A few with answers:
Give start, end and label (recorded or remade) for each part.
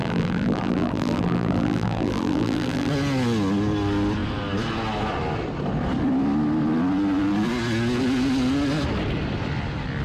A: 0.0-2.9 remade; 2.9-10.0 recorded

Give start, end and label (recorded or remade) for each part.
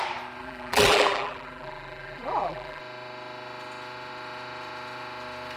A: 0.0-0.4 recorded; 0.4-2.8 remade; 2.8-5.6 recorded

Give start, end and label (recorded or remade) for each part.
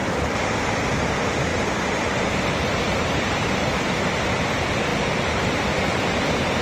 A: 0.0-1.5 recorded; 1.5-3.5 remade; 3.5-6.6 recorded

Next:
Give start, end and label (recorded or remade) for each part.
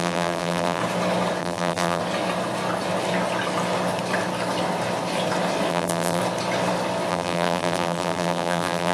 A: 0.0-0.8 remade; 0.8-1.4 recorded; 1.4-2.0 remade; 2.0-5.7 recorded; 5.7-6.2 remade; 6.2-7.1 recorded; 7.1-8.9 remade